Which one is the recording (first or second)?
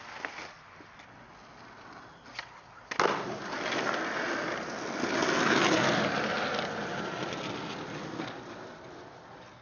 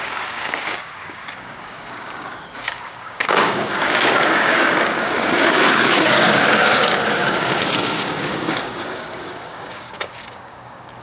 first